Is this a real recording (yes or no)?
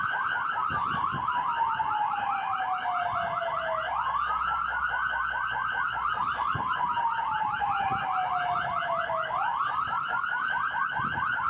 yes